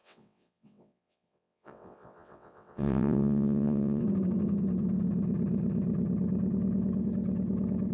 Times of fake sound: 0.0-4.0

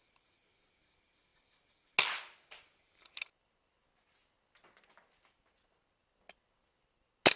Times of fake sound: none

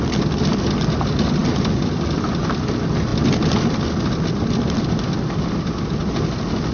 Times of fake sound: none

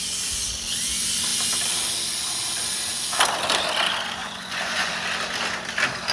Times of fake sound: 4.2-4.9

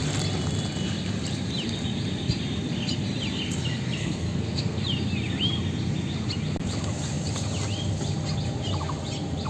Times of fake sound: 4.0-4.8

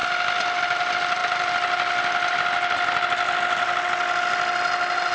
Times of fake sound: none